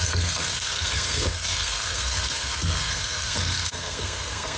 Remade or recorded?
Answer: remade